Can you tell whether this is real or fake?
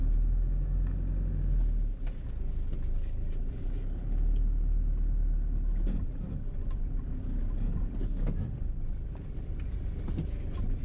real